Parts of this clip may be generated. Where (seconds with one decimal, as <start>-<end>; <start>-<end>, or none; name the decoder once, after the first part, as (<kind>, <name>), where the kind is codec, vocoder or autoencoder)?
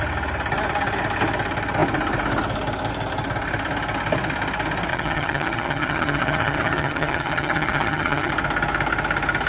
4.9-8.3 (vocoder, HiFi-GAN)